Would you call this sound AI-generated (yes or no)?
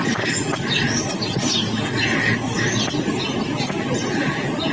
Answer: no